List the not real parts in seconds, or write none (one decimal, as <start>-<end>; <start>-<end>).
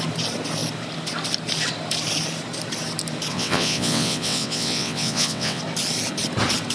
3.3-5.6